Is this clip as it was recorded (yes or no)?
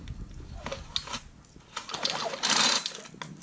yes